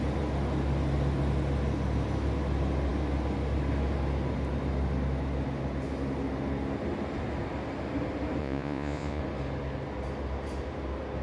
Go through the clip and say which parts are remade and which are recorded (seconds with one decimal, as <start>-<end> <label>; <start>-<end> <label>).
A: 0.0-8.4 recorded; 8.4-9.2 remade; 9.2-11.2 recorded